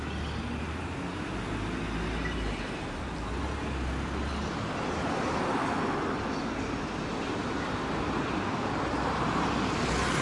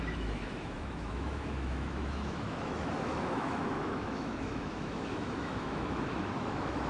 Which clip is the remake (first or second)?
second